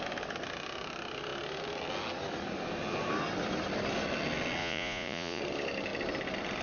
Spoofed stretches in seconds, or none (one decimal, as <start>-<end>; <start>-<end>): 4.6-5.4